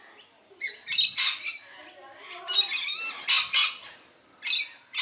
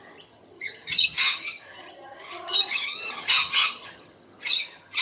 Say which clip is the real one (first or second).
first